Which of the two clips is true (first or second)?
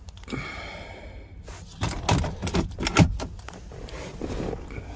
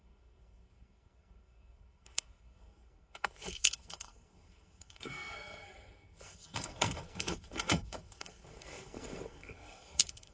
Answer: first